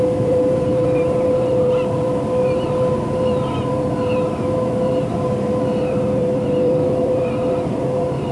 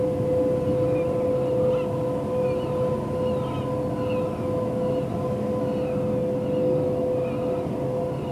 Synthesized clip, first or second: first